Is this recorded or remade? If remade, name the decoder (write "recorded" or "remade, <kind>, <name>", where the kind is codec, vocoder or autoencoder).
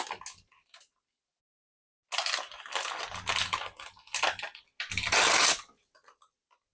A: recorded